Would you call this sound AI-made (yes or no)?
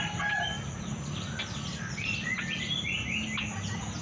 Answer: no